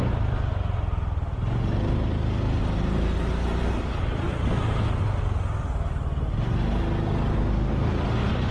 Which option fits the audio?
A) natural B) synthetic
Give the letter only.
A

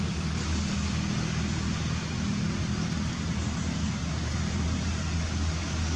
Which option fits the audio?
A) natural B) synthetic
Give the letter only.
A